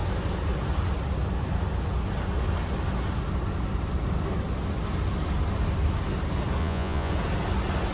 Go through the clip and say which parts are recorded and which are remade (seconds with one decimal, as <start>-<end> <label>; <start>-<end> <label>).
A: 0.0-6.6 recorded; 6.6-7.1 remade; 7.1-7.9 recorded